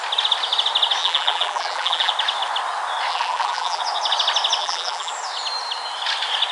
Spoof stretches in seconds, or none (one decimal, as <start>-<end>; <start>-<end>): 1.0-2.1; 3.1-3.8; 4.6-5.1